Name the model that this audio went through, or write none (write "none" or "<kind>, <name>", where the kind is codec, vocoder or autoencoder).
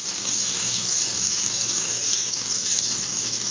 codec, DAC